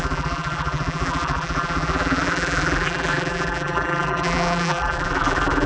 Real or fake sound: fake